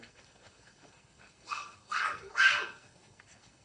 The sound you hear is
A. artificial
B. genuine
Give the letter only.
A